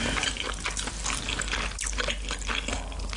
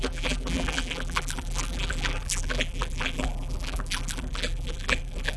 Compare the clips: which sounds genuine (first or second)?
first